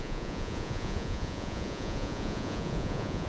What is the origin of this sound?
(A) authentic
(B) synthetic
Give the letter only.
B